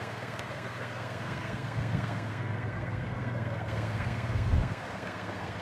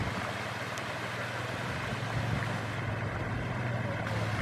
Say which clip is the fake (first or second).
first